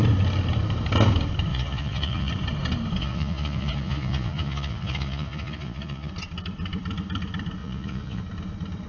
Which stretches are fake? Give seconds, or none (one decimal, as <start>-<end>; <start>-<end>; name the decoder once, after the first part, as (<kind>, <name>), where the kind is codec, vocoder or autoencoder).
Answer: 1.5-2.3 (vocoder, Vocos); 3.0-6.1; 7.6-8.2